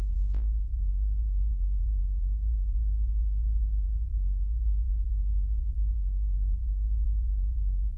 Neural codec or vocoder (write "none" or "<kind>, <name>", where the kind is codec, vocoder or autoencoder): vocoder, Vocos